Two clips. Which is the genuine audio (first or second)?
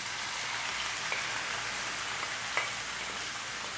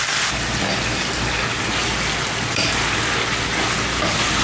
first